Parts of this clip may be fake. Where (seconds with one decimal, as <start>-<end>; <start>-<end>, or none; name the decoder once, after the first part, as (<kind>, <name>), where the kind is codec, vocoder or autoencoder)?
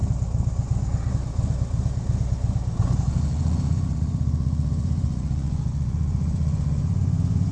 2.8-7.5 (vocoder, Vocos)